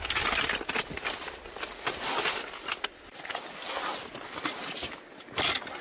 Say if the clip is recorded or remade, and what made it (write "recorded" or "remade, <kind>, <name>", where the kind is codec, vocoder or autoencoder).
recorded